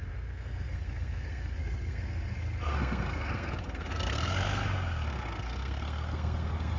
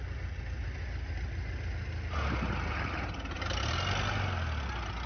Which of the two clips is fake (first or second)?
first